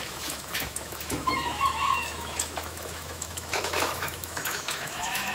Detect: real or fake fake